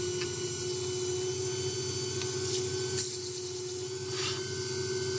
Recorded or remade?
recorded